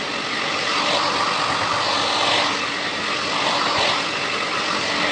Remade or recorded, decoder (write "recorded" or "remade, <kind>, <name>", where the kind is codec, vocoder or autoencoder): recorded